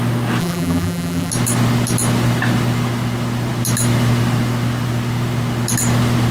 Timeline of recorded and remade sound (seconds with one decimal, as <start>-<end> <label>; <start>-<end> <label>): 0.0-0.4 recorded; 0.4-1.3 remade; 1.3-6.3 recorded